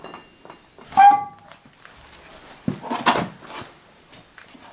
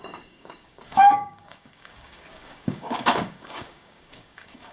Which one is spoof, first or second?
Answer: second